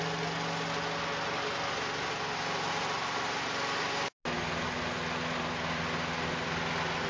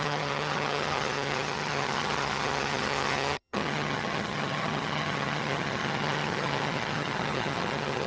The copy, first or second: second